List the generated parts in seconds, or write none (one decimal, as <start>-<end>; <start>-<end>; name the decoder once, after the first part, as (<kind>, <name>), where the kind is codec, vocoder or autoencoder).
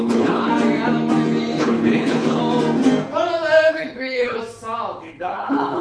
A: 0.0-0.5 (codec, HILCodec); 1.6-2.4; 3.7-4.4; 5.0-5.8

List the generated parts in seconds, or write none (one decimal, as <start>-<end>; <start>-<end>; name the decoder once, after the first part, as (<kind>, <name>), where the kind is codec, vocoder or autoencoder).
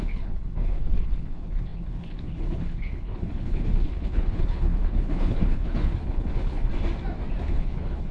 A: 0.0-6.7 (codec, HILCodec); 7.5-8.1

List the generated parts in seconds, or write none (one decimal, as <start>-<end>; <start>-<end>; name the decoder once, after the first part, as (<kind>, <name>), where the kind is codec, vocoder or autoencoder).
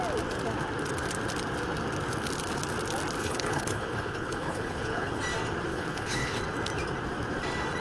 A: 3.2-5.2 (codec, HILCodec); 5.7-6.4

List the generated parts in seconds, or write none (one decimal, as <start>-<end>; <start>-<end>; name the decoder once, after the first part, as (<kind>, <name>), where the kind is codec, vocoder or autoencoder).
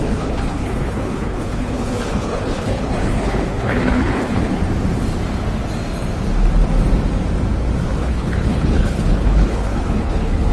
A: 0.0-4.6 (codec, HILCodec); 8.0-10.5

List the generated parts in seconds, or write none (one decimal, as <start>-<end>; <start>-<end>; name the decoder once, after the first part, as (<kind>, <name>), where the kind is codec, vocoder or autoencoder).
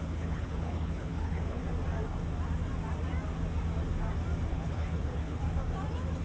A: 0.0-1.6 (codec, HILCodec); 4.5-5.4